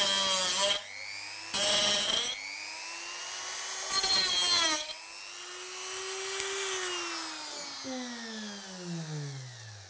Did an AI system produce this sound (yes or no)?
no